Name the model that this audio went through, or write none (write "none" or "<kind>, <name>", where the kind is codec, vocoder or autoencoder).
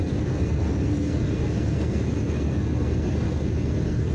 codec, SNAC